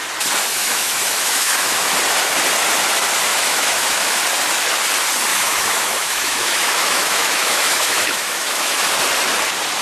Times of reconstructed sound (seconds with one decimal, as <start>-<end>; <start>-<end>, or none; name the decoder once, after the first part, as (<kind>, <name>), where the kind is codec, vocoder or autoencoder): 0.6-1.9 (autoencoder, DAC-VAE); 3.3-4.2; 5.3-8.8